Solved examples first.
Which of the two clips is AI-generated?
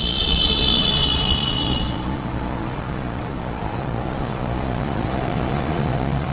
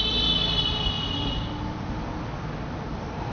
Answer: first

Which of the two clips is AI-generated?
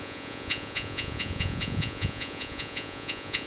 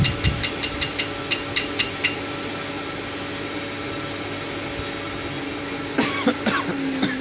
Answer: first